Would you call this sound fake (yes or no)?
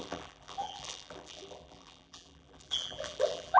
yes